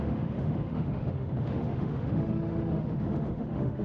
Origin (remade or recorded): remade